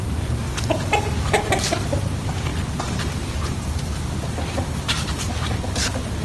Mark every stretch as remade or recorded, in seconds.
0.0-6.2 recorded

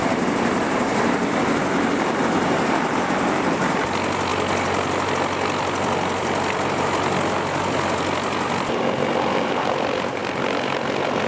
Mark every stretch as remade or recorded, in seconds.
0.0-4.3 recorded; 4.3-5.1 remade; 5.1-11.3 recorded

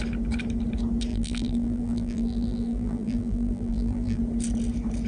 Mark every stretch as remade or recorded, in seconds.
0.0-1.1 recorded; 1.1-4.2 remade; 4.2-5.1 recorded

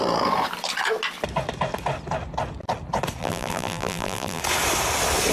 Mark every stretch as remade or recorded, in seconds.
0.0-3.2 recorded; 3.2-4.4 remade; 4.4-5.3 recorded

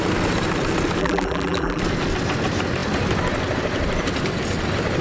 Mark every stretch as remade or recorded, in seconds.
0.0-1.0 recorded; 1.0-1.8 remade; 1.8-5.0 recorded

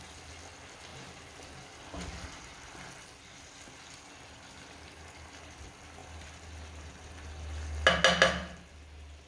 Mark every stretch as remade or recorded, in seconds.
0.0-9.3 recorded

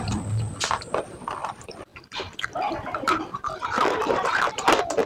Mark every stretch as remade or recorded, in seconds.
0.0-1.4 recorded; 1.4-4.5 remade; 4.5-5.1 recorded